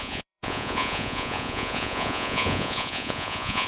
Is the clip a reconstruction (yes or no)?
yes